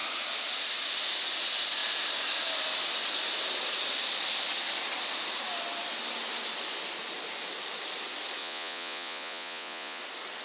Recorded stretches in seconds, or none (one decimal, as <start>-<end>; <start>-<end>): 0.0-8.4; 10.0-10.4